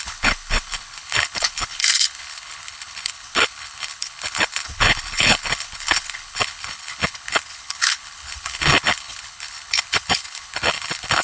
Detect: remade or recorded remade